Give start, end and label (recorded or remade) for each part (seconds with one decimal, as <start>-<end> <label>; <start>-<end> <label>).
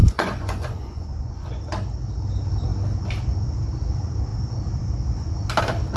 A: 0.0-1.6 remade; 1.6-6.0 recorded